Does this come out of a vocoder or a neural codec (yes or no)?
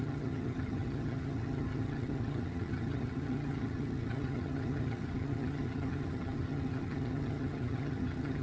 yes